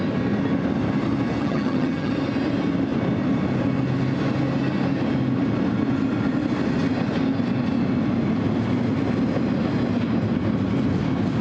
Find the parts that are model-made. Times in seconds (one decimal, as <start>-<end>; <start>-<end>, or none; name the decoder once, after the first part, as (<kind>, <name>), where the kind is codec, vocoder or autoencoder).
1.4-2.1 (vocoder, HiFi-GAN)